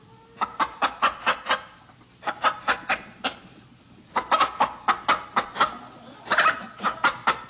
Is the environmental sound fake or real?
real